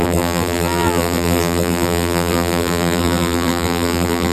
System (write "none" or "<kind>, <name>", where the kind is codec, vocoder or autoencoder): vocoder, BigVGAN v2